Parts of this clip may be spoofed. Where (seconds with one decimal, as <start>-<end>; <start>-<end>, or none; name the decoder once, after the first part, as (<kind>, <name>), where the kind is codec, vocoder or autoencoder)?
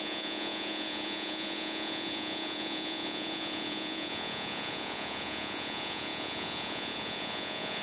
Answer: 0.0-7.8 (vocoder, Vocos)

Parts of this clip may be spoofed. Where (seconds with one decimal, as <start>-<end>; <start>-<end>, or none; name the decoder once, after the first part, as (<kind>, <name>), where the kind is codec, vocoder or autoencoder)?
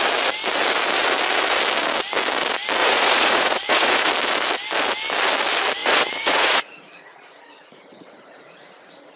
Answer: 2.8-4.1 (vocoder, Vocos); 5.8-9.2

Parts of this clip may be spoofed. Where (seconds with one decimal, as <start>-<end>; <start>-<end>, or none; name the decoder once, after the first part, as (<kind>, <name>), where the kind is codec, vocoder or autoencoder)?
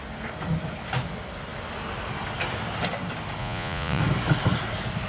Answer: 3.4-4.0 (vocoder, Vocos)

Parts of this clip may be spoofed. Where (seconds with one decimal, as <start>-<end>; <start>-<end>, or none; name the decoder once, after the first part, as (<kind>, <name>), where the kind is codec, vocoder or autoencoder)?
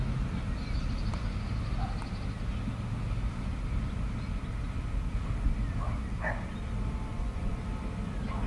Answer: 7.1-7.6 (vocoder, Vocos)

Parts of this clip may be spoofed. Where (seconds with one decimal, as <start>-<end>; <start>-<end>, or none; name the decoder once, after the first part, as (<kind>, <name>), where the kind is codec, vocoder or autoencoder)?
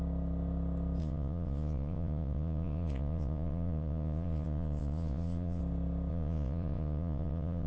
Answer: 1.0-5.6 (vocoder, Vocos); 6.1-7.7